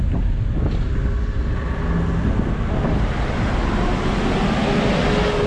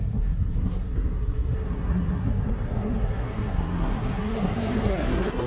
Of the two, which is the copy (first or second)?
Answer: second